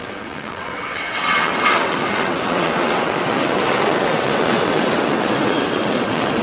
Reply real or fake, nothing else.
fake